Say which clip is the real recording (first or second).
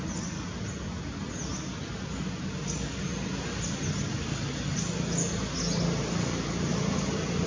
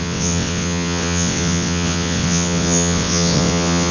first